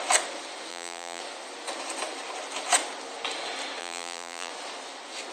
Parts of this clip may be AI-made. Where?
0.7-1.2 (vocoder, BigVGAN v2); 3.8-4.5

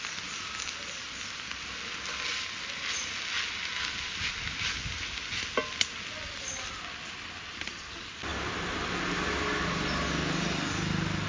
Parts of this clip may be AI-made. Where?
8.3-8.9 (vocoder, BigVGAN v2)

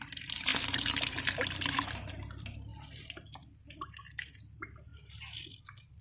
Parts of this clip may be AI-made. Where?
0.0-2.7 (vocoder, BigVGAN v2); 4.4-4.9; 5.6-6.0

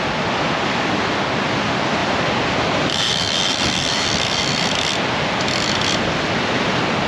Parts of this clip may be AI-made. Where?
2.0-6.3 (vocoder, BigVGAN v2)